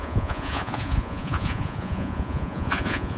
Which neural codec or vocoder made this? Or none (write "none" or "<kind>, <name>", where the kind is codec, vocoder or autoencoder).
vocoder, Vocos